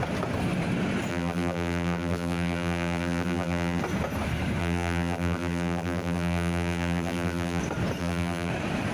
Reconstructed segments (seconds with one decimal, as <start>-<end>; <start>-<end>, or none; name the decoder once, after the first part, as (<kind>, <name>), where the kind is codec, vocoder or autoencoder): 1.1-3.8 (vocoder, BigVGAN v2); 4.6-7.6; 8.0-8.5